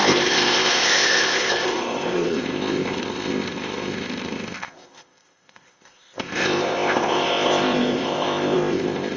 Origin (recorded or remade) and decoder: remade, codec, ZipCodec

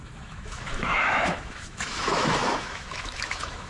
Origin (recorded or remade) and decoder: remade, autoencoder, DAC-VAE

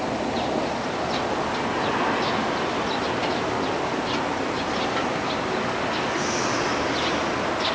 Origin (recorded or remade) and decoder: recorded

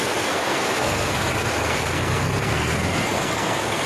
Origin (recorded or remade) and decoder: remade, codec, SNAC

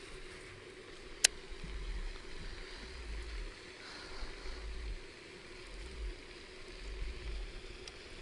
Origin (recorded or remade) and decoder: recorded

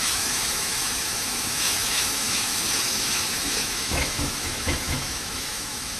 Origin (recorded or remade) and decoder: remade, autoencoder, DAC-VAE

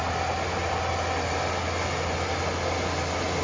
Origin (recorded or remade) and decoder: recorded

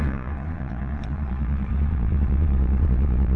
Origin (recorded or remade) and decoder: remade, vocoder, Vocos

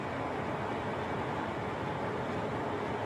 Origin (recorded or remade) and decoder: recorded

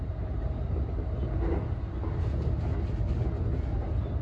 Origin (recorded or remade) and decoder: recorded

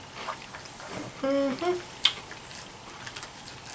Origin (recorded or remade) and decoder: recorded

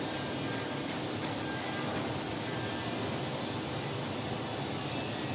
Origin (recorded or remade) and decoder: recorded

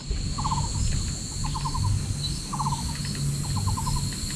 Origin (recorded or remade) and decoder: recorded